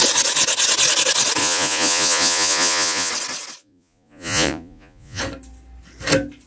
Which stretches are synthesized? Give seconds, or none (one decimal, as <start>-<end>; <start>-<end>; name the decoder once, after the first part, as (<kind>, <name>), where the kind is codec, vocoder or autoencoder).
1.4-3.1 (vocoder, Vocos); 3.6-5.2

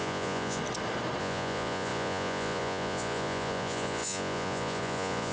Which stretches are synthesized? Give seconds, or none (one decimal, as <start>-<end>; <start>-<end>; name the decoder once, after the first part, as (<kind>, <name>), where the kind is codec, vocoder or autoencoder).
0.0-0.6 (vocoder, Vocos); 1.2-5.3